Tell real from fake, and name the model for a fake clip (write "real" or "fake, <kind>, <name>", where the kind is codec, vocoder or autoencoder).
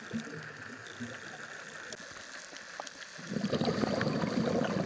real